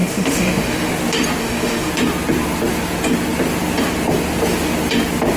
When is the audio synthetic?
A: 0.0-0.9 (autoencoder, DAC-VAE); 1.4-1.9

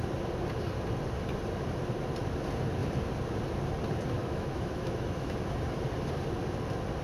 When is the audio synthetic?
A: 4.2-5.3 (autoencoder, DAC-VAE)

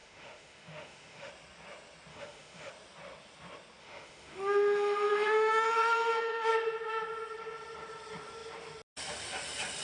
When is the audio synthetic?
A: 0.0-1.3 (autoencoder, DAC-VAE); 2.1-2.7; 3.8-6.5